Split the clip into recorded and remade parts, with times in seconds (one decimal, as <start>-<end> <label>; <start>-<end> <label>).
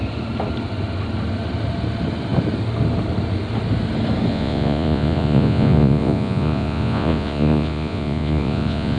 0.0-4.3 recorded; 4.3-9.0 remade